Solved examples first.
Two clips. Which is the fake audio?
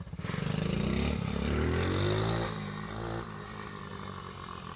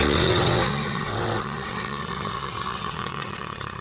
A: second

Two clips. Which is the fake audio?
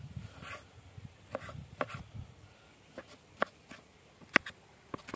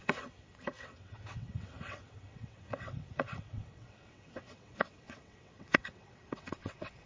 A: second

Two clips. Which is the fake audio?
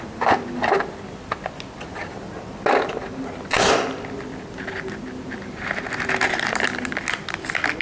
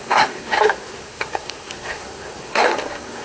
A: second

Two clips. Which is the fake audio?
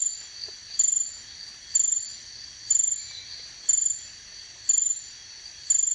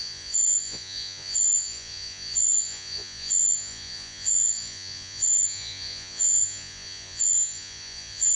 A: second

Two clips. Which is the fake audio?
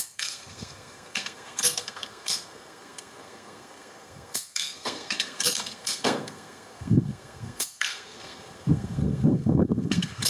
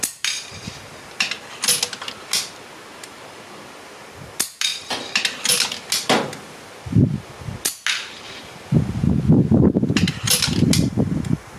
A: first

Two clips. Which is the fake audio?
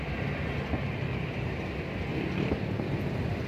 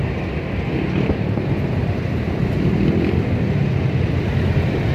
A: second